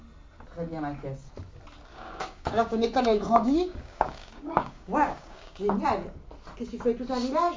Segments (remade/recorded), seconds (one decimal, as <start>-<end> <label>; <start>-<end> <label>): 0.0-1.9 recorded; 1.9-5.6 remade; 5.6-7.6 recorded